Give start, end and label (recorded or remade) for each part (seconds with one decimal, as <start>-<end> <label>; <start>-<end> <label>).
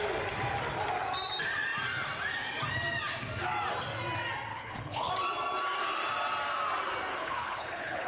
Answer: 0.0-4.5 recorded; 4.5-5.1 remade; 5.1-7.1 recorded; 7.1-8.1 remade